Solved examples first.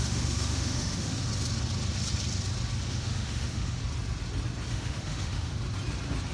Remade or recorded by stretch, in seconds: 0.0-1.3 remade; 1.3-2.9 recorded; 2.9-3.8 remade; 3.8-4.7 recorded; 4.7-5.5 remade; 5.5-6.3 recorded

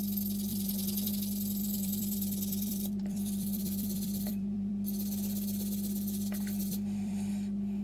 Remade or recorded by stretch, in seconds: 0.0-0.5 recorded; 0.5-1.1 remade; 1.1-1.6 recorded; 1.6-4.7 remade; 4.7-6.6 recorded; 6.6-7.3 remade; 7.3-7.8 recorded

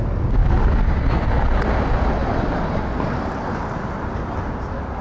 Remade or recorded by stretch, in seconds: 0.0-5.0 recorded

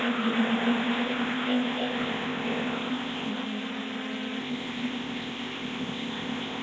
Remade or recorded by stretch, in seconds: 0.0-3.3 remade; 3.3-4.4 recorded; 4.4-6.6 remade

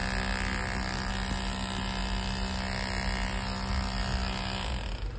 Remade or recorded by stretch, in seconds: 0.0-5.2 recorded

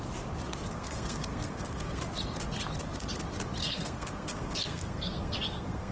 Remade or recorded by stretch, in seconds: 0.0-0.7 recorded; 0.7-2.0 remade; 2.0-3.6 recorded; 3.6-5.9 remade